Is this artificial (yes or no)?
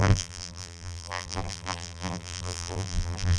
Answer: yes